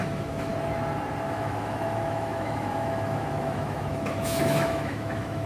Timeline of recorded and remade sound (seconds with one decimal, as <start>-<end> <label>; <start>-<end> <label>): 0.0-0.5 remade; 0.5-1.3 recorded; 1.3-5.5 remade